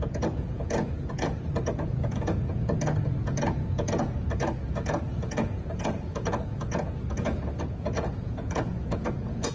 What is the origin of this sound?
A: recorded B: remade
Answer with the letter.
B